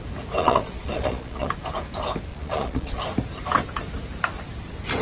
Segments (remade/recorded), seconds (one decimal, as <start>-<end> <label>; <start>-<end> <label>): 0.0-0.4 recorded; 0.4-1.5 remade; 1.5-2.3 recorded; 2.3-3.0 remade; 3.0-5.0 recorded